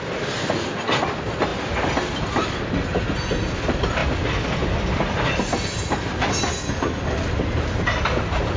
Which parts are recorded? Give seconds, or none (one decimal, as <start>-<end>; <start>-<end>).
0.0-8.6